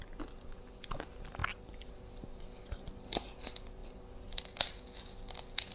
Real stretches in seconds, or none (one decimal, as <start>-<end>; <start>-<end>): 0.0-5.7